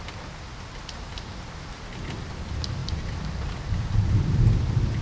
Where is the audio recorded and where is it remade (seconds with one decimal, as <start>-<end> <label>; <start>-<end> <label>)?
0.0-2.8 recorded; 2.8-4.1 remade; 4.1-5.0 recorded